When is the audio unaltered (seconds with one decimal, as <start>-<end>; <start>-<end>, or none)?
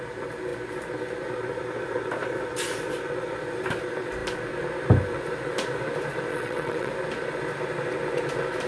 0.0-6.3; 6.9-8.7